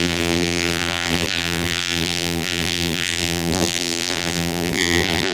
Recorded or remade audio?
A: remade